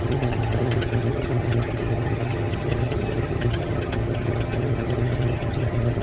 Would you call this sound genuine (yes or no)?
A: no